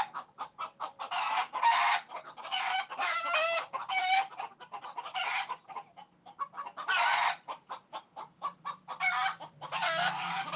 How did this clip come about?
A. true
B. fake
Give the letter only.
A